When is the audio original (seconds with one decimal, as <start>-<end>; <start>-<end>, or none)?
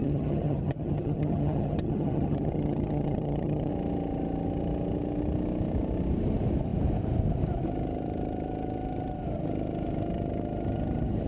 3.7-11.3